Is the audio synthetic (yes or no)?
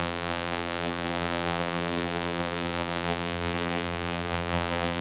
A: yes